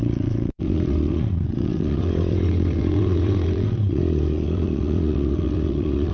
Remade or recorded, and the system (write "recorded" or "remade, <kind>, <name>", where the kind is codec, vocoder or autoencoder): remade, vocoder, WaveNeXt